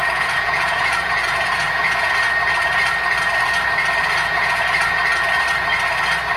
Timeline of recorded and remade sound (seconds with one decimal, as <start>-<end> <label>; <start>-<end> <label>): 0.0-2.1 remade; 2.1-4.0 recorded; 4.0-5.0 remade; 5.0-6.4 recorded